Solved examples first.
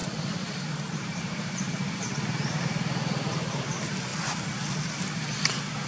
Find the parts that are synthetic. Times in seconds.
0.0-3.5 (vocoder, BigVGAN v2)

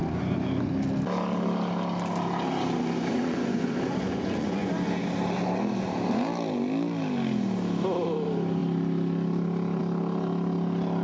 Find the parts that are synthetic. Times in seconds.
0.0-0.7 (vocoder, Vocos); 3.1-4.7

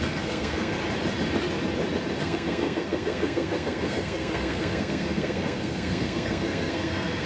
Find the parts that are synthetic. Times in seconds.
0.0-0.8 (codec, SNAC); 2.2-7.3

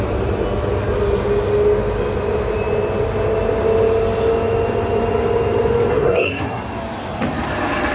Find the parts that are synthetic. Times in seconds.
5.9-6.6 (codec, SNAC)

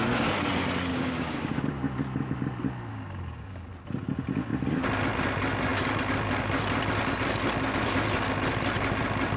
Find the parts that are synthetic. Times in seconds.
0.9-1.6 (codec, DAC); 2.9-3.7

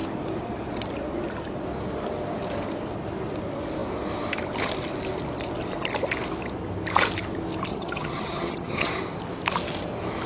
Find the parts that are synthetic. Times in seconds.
7.7-8.9 (vocoder, HiFi-GAN)